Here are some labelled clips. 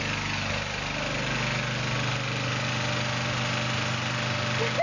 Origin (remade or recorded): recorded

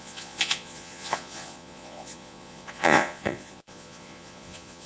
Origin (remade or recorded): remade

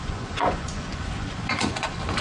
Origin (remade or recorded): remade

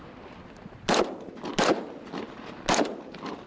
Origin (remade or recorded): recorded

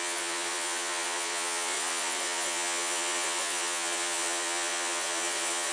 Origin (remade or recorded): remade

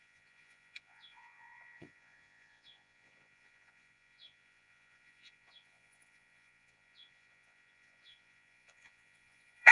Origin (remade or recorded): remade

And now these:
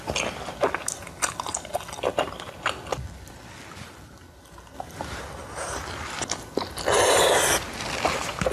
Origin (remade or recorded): recorded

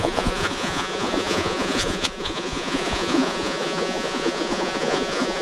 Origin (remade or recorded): remade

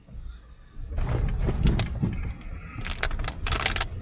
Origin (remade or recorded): recorded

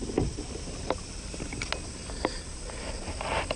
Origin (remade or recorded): recorded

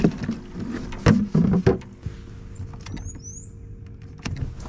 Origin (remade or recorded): recorded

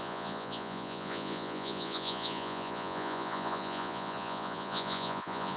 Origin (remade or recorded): remade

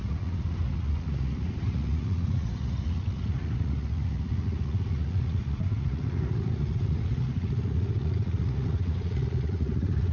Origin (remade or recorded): remade